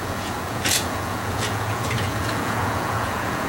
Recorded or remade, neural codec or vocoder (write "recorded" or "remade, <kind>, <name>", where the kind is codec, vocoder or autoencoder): remade, vocoder, Vocos